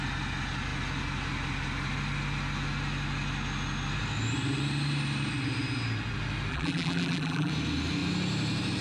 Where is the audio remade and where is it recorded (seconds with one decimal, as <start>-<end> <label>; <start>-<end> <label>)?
0.0-6.5 recorded; 6.5-7.5 remade; 7.5-8.8 recorded